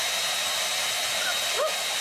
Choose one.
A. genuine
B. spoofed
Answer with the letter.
A